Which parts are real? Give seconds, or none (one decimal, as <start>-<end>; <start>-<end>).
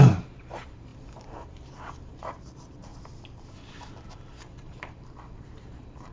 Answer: 2.9-3.7